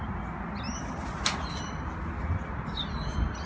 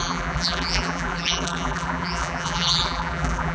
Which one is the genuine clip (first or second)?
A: first